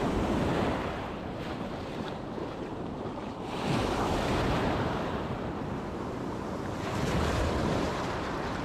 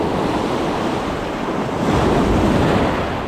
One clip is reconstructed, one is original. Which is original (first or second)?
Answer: second